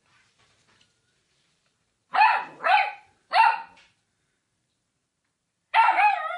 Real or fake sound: fake